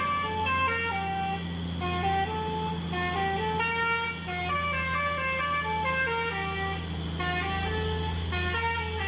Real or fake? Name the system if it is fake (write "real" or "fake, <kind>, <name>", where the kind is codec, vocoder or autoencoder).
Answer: real